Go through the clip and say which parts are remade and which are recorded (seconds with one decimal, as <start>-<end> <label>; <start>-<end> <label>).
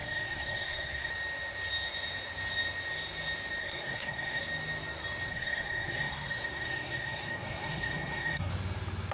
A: 0.0-1.1 remade; 1.1-3.6 recorded; 3.6-4.4 remade; 4.4-5.3 recorded; 5.3-8.5 remade; 8.5-9.1 recorded